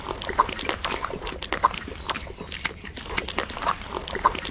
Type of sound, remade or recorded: remade